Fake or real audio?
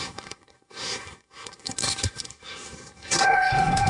fake